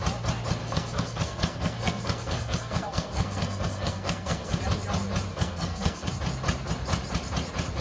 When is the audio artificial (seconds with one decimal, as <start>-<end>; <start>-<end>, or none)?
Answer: 0.6-4.6; 5.3-6.1